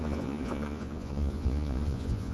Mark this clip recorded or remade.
remade